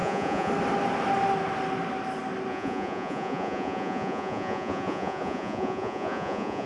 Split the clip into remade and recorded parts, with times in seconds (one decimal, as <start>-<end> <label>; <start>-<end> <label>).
0.0-0.5 remade; 0.5-2.5 recorded; 2.5-6.7 remade